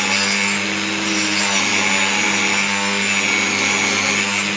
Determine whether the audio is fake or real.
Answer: real